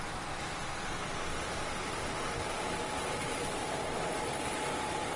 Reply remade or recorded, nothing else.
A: recorded